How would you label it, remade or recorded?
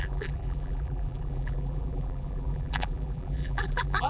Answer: remade